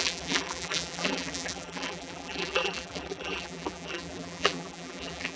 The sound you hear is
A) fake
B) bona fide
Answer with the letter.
A